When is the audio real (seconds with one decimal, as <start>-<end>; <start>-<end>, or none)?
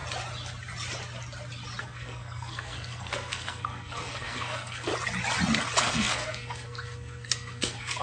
0.0-1.8; 4.9-5.8